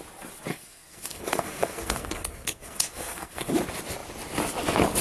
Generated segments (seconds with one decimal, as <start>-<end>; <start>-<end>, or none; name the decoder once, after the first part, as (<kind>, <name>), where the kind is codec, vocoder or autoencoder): 0.5-3.5 (codec, SNAC)